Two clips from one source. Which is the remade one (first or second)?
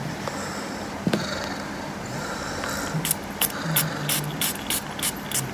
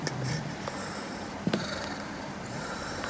second